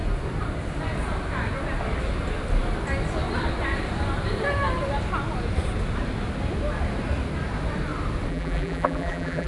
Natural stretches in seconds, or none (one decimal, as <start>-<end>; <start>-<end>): 0.0-8.3